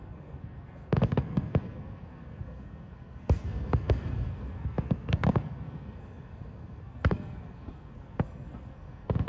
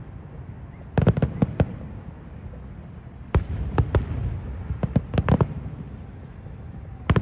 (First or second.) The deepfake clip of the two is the first